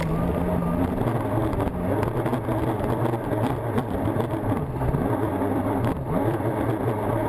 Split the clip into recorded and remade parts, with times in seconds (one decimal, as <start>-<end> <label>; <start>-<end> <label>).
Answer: 0.0-2.3 recorded; 2.3-6.7 remade; 6.7-7.3 recorded